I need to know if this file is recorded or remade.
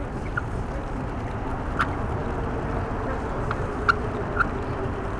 recorded